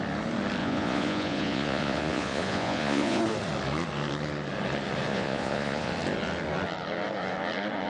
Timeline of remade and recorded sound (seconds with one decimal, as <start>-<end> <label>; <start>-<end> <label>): 0.0-0.6 recorded; 0.6-3.2 remade; 3.2-5.1 recorded; 5.1-5.9 remade; 5.9-7.9 recorded